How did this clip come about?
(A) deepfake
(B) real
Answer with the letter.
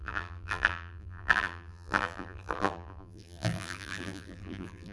A